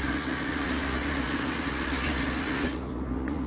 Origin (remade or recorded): remade